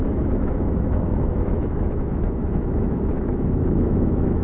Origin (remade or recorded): remade